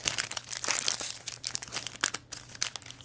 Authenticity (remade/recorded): recorded